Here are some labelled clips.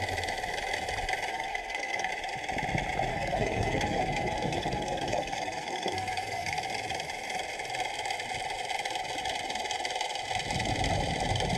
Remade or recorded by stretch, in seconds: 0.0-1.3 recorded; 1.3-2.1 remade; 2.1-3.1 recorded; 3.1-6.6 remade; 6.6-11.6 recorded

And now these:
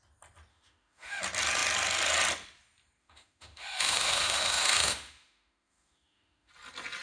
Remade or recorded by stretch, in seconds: 0.0-0.5 recorded; 0.5-1.2 remade; 1.2-3.0 recorded; 3.0-6.5 remade; 6.5-7.0 recorded

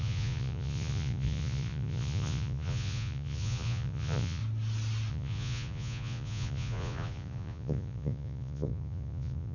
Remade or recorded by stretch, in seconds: 0.0-4.4 remade; 4.4-5.1 recorded; 5.1-9.5 remade

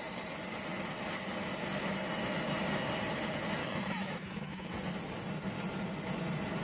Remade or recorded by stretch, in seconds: 0.0-3.6 recorded; 3.6-4.7 remade; 4.7-6.6 recorded

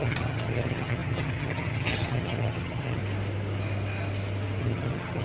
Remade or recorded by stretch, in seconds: 0.0-3.0 remade; 3.0-4.6 recorded; 4.6-5.2 remade

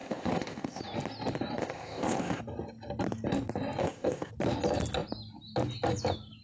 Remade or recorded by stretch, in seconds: 0.0-0.8 remade; 0.8-1.6 recorded; 1.6-2.4 remade; 2.4-3.8 recorded; 3.8-4.3 remade; 4.3-6.4 recorded